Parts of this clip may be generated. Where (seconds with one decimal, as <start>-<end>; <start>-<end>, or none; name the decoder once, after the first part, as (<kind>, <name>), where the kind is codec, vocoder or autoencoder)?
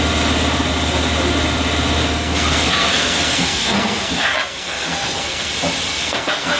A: 2.0-5.5 (codec, SNAC); 5.9-6.6